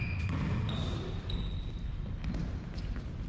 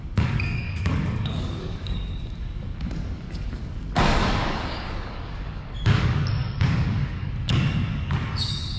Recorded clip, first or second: first